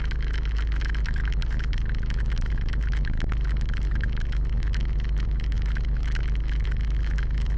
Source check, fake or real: fake